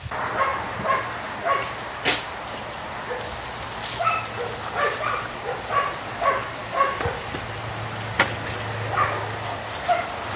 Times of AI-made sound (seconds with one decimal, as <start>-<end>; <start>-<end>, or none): none